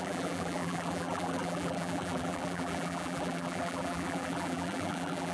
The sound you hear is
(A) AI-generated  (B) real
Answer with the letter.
A